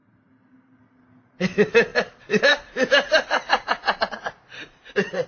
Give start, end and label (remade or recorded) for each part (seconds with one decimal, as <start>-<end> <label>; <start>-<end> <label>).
0.0-1.9 recorded; 1.9-5.3 remade